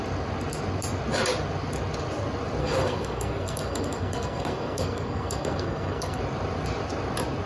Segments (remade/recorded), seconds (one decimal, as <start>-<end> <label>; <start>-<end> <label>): 0.0-2.6 recorded; 2.6-6.2 remade; 6.2-7.5 recorded